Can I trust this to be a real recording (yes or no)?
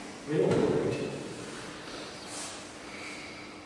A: yes